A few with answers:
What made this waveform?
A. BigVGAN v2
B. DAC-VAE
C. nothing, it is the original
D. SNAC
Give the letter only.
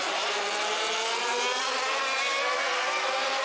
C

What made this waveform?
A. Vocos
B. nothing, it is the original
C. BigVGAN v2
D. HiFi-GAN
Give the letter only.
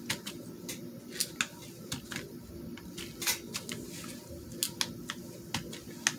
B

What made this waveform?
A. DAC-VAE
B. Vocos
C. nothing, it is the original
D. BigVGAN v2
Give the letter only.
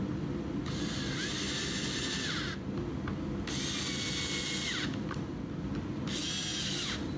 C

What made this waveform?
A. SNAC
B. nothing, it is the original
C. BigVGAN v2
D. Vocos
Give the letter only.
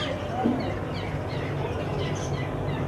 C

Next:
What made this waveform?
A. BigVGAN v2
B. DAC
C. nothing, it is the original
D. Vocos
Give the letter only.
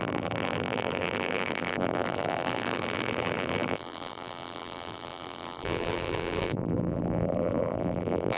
A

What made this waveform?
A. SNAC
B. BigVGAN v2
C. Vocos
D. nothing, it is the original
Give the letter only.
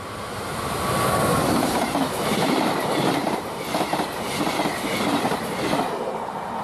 B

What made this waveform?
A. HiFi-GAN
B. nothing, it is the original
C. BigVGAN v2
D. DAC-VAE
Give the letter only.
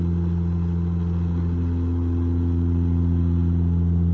B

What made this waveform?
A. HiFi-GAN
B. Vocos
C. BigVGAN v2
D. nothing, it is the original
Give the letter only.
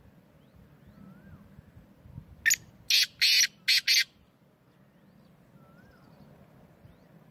D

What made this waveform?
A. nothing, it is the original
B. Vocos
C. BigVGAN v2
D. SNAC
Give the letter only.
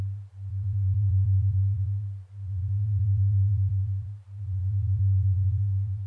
C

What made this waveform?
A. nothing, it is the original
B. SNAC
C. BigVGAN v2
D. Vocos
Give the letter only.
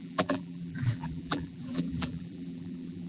C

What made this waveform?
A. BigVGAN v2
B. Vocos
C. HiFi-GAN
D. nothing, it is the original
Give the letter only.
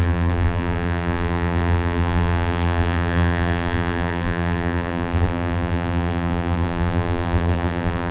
A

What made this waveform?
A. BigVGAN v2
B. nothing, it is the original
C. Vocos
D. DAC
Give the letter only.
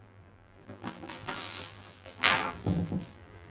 A